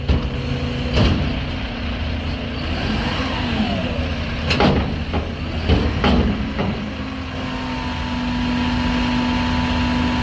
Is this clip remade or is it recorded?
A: recorded